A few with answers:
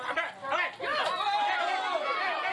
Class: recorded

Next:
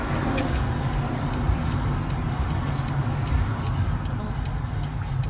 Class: recorded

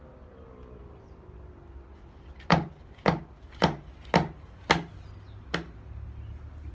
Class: recorded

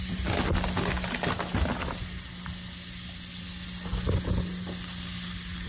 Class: recorded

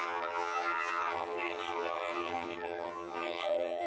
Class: remade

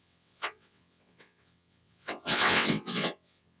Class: remade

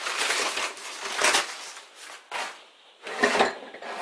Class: recorded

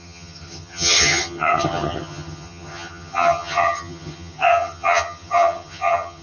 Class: remade